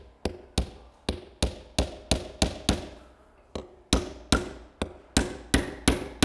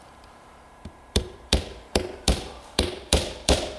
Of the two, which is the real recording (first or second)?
first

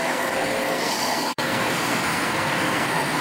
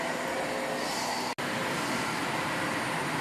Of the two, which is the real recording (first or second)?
second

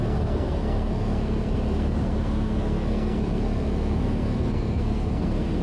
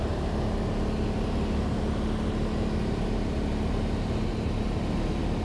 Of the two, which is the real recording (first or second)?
second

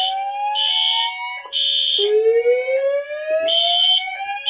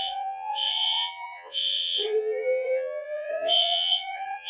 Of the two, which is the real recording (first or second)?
first